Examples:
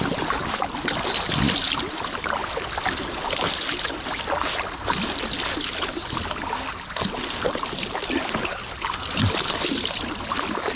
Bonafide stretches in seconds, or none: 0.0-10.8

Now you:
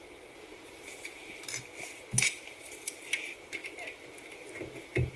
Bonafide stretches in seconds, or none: 0.0-5.2

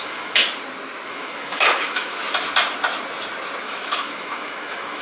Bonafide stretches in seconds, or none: 0.4-1.1; 2.2-3.6

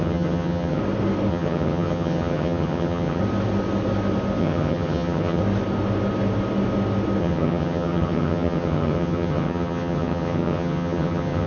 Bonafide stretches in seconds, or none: 0.8-1.3; 3.2-4.4; 5.4-7.2

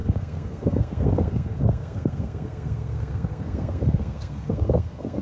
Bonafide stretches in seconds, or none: none